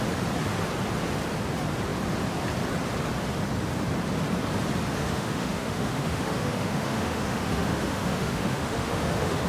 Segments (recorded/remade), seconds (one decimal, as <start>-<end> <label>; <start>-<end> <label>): 0.0-5.0 recorded; 5.0-9.5 remade